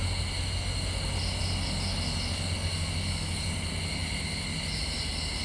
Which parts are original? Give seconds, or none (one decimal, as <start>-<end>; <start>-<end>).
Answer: 0.0-5.4